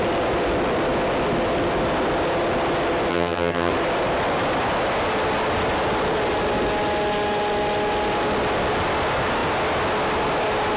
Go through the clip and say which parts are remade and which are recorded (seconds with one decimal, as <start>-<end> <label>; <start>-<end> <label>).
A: 0.0-3.1 recorded; 3.1-3.7 remade; 3.7-10.8 recorded